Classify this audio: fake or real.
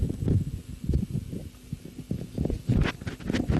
real